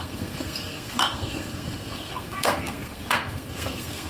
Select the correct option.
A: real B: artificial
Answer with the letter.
B